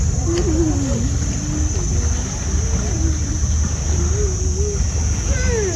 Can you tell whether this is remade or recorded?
recorded